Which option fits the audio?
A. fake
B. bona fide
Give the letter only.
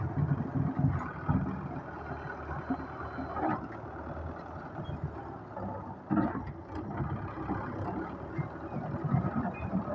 B